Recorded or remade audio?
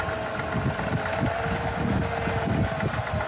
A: recorded